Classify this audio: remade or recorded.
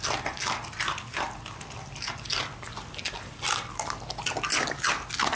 recorded